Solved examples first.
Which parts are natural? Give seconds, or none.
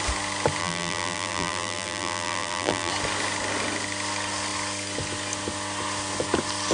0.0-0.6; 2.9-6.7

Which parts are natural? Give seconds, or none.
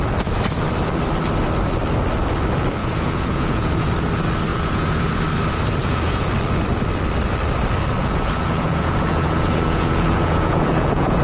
0.0-2.8; 3.9-4.5; 5.2-5.8; 6.3-8.0